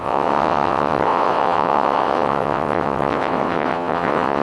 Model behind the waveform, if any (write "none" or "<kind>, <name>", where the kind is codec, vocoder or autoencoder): vocoder, WaveNeXt